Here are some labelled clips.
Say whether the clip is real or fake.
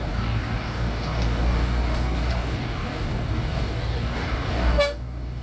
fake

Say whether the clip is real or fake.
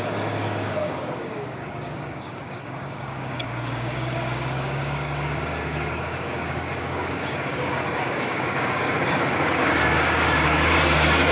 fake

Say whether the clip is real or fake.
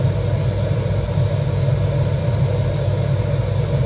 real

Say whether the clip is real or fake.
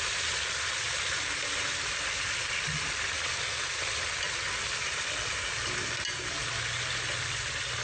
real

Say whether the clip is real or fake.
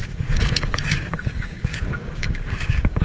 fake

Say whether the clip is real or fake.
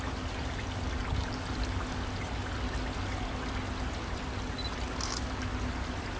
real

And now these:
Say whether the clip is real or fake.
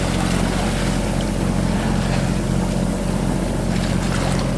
real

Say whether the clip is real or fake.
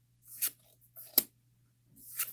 real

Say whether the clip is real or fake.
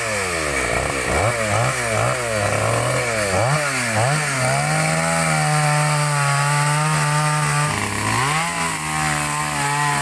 real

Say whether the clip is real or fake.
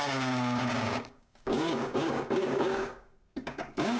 fake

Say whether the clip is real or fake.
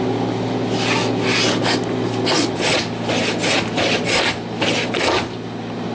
real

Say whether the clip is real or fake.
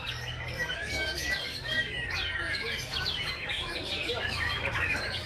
fake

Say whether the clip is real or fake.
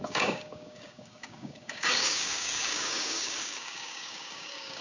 fake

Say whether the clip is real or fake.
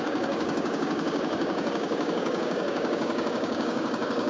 fake